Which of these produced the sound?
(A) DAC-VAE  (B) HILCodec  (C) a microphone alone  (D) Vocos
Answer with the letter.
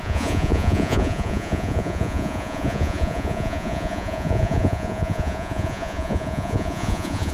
D